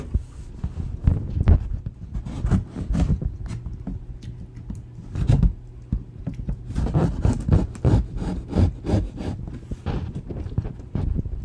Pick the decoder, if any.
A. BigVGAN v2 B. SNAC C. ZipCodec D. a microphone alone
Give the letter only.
D